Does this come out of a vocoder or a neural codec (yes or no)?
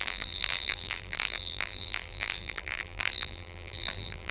yes